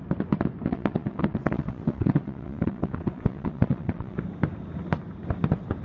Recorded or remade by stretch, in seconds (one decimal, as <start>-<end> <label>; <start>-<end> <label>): 0.0-0.7 recorded; 0.7-4.2 remade; 4.2-5.8 recorded